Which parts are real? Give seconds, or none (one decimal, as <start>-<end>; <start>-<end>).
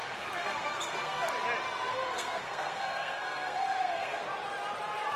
1.3-1.9; 4.2-5.2